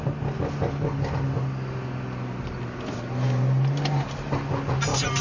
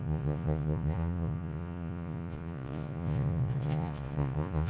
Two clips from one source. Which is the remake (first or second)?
second